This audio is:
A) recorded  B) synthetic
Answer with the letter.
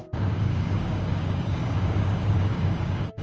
B